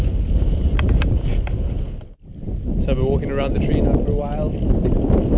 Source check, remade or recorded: recorded